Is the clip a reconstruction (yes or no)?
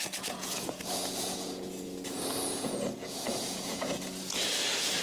yes